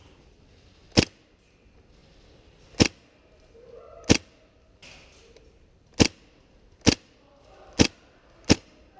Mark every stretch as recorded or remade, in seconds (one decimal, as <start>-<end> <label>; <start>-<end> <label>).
0.0-9.0 recorded